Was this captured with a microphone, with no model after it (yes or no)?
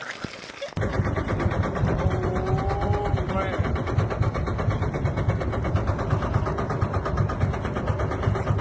yes